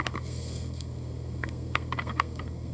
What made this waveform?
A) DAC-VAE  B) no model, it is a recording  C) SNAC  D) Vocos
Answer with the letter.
C